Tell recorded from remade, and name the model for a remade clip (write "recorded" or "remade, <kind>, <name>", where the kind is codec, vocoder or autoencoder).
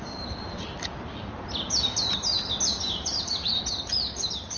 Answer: recorded